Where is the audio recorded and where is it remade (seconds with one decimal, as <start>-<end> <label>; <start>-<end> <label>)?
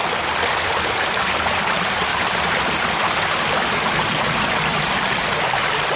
0.0-6.0 recorded